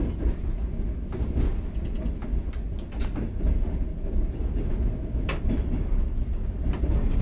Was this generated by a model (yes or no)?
no